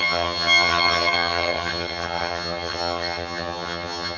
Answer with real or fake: fake